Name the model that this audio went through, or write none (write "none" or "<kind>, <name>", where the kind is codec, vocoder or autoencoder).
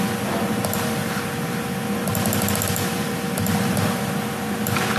none